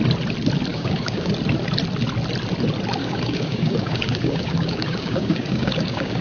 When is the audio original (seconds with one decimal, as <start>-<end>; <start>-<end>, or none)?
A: 0.0-0.7; 1.3-3.0